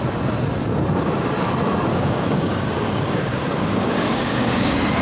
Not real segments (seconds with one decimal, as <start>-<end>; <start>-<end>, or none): 1.9-5.0